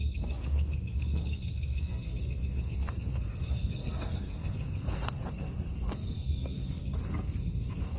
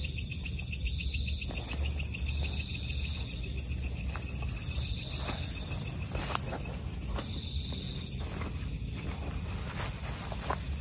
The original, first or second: second